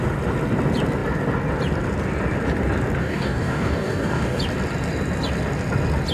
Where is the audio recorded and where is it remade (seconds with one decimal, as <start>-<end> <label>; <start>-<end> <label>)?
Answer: 0.0-3.0 recorded; 3.0-4.4 remade; 4.4-6.1 recorded